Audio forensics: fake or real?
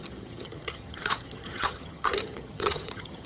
fake